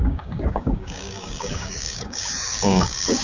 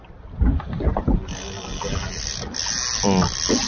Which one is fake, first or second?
first